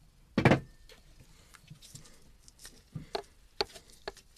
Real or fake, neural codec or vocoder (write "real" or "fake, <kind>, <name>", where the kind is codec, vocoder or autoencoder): real